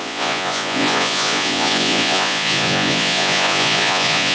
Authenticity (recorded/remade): remade